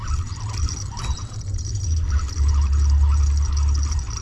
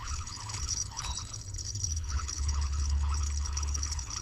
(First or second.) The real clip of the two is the first